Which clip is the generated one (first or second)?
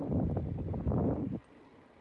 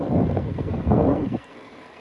second